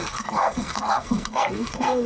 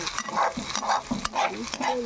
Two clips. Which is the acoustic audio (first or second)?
second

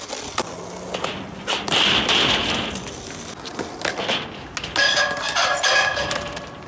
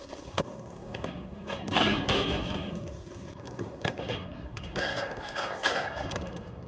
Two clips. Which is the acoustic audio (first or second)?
first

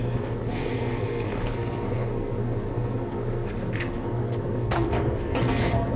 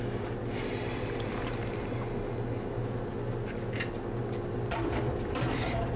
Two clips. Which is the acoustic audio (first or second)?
second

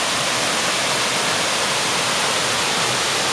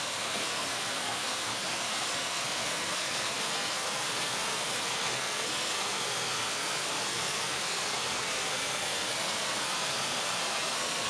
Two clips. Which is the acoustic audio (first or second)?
first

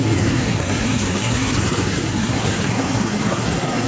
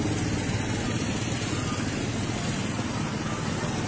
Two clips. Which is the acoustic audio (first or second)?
second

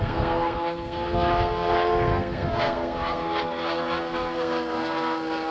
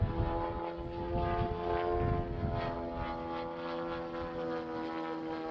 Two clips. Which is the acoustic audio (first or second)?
second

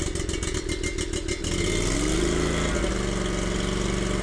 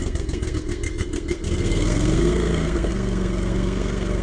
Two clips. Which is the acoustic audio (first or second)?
first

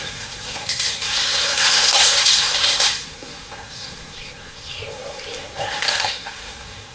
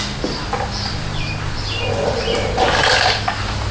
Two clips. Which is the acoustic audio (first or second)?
second